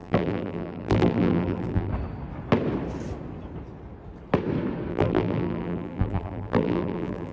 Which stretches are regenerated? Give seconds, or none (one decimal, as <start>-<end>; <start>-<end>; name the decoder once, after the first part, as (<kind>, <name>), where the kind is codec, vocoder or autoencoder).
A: 0.0-1.9 (vocoder, BigVGAN v2); 4.9-7.3